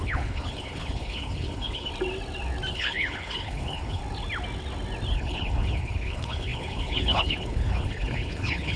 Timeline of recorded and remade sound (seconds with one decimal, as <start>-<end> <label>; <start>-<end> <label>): 0.0-1.9 remade; 1.9-2.7 recorded; 2.7-4.0 remade; 4.0-5.1 recorded; 5.1-8.8 remade